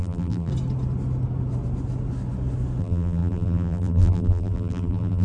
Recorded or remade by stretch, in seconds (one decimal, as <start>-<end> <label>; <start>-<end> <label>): 0.0-0.5 remade; 0.5-2.8 recorded; 2.8-5.2 remade